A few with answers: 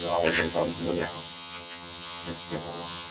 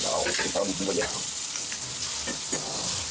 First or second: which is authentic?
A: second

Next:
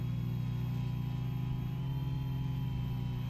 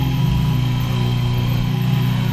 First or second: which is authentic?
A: first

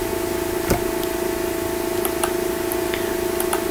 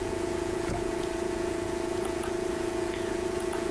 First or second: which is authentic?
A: first